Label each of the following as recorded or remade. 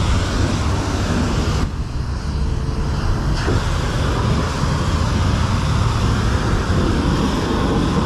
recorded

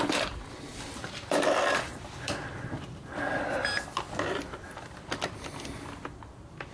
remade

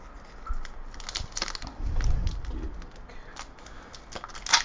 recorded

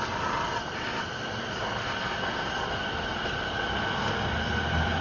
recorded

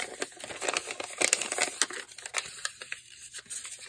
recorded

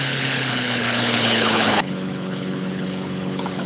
remade